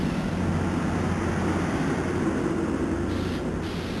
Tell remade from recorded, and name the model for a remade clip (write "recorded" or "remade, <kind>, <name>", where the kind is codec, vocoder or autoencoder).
recorded